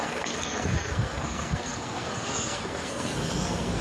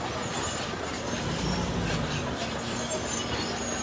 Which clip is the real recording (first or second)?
second